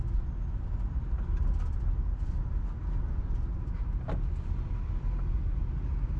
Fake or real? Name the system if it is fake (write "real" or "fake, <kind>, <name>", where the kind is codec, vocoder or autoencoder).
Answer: real